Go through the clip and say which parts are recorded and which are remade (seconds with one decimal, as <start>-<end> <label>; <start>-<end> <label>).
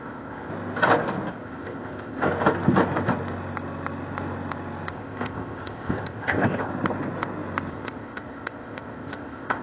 0.0-0.5 remade; 0.5-1.3 recorded; 1.3-2.3 remade; 2.3-4.9 recorded; 4.9-6.7 remade; 6.7-7.7 recorded; 7.7-9.6 remade